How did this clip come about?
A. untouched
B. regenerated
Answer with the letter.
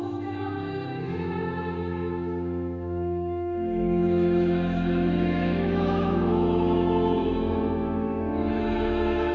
B